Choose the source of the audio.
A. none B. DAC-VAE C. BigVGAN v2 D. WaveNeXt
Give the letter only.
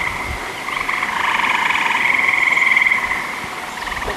A